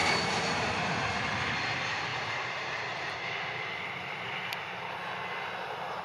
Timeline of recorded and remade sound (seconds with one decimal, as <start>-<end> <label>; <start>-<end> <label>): 0.0-1.0 remade; 1.0-2.1 recorded; 2.1-3.2 remade; 3.2-6.0 recorded